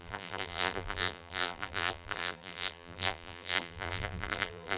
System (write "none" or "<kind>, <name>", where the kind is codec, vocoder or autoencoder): vocoder, BigVGAN v2